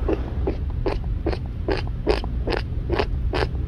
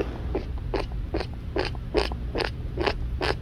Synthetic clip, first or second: first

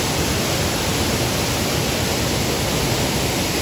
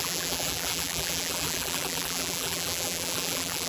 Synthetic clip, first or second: second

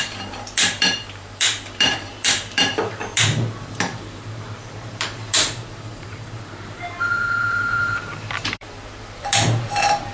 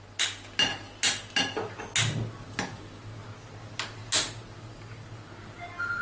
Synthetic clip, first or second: first